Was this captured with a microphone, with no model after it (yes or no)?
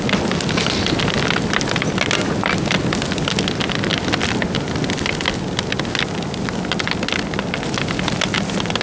yes